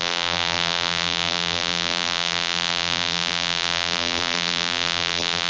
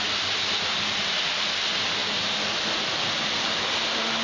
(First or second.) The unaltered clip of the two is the second